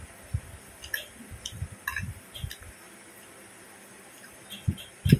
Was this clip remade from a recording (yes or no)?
no